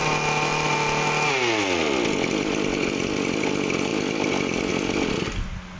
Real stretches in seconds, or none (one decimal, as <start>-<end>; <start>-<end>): 0.0-5.8